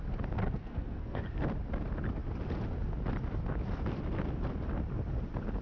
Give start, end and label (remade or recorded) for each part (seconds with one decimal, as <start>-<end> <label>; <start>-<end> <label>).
0.0-0.4 recorded; 0.4-1.2 remade; 1.2-5.6 recorded